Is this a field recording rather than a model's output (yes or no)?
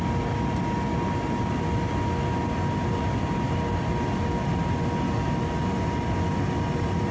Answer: yes